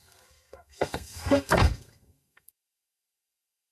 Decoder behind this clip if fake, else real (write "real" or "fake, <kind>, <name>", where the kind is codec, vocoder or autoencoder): fake, codec, SNAC